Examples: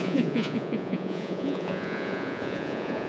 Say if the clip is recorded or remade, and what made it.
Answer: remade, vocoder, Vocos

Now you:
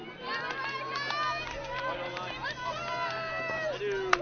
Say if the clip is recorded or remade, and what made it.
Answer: recorded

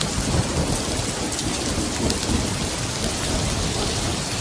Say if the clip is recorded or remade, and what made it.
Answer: recorded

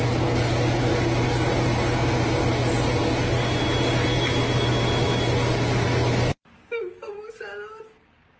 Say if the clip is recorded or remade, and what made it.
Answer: recorded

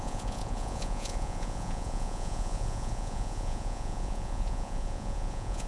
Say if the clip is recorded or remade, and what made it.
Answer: remade, vocoder, Vocos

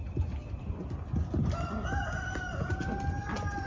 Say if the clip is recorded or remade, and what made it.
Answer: recorded